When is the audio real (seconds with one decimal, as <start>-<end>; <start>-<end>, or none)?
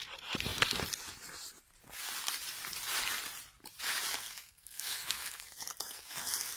0.0-4.1